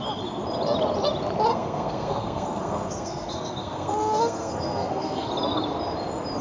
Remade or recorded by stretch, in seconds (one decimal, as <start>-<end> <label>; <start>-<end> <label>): 0.0-1.5 recorded; 1.5-5.3 remade; 5.3-6.4 recorded